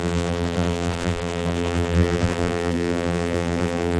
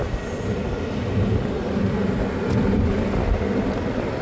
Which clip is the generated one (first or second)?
first